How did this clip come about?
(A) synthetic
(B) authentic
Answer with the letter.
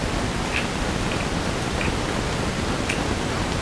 B